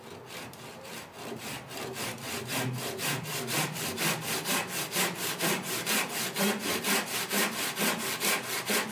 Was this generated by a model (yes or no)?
yes